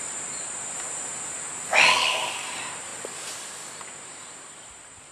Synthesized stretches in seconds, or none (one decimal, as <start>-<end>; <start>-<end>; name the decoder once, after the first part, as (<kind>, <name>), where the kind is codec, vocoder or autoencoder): 0.0-1.7 (vocoder, BigVGAN v2); 2.4-5.1